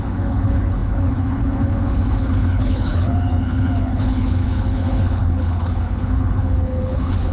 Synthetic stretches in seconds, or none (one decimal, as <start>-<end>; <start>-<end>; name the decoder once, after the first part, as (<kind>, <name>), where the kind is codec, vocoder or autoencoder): 0.0-7.3 (codec, HILCodec)